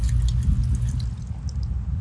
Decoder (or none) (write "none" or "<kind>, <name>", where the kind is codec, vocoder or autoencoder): none